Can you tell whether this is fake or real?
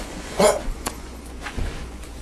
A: fake